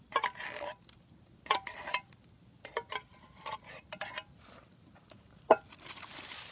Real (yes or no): yes